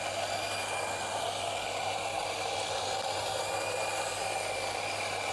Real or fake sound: real